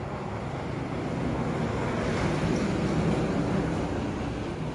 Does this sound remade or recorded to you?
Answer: recorded